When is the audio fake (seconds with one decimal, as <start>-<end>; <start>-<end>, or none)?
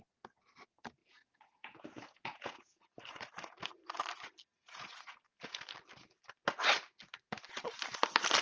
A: 1.0-2.8; 4.5-5.6